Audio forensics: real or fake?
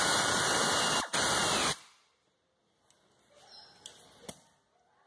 real